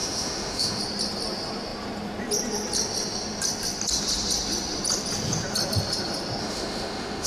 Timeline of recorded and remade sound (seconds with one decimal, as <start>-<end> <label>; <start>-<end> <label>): 0.0-0.8 remade; 0.8-6.4 recorded; 6.4-7.3 remade